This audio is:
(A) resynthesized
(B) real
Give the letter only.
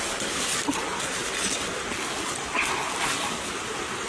B